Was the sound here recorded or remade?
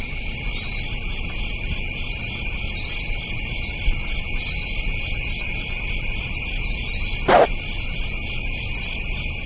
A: recorded